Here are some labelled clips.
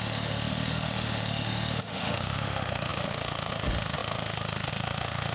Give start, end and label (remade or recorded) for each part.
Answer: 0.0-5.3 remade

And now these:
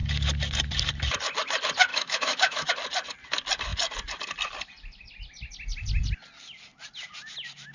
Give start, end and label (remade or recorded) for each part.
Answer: 0.0-1.9 recorded; 1.9-2.7 remade; 2.7-7.7 recorded

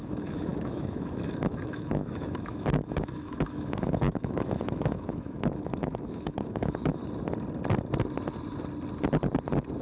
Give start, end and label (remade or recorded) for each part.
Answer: 0.0-7.0 remade; 7.0-9.8 recorded

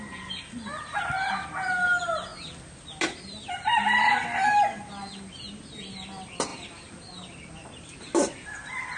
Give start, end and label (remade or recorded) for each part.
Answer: 0.0-9.0 recorded

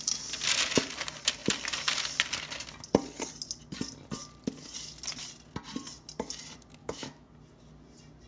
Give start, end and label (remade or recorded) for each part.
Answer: 0.0-6.8 recorded; 6.8-7.3 remade; 7.3-8.3 recorded

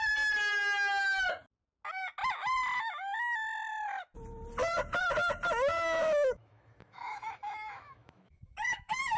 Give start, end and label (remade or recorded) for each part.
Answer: 0.0-6.0 recorded; 6.0-9.2 remade

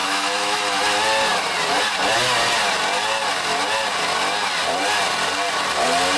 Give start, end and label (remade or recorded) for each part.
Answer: 0.0-0.8 remade; 0.8-6.2 recorded